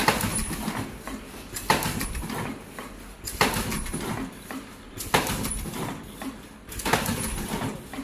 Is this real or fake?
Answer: real